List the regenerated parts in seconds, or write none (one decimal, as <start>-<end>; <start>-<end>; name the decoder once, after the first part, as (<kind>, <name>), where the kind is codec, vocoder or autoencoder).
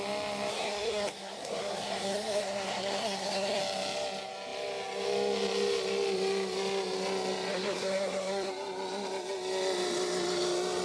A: 0.5-3.6 (codec, SNAC); 7.5-8.5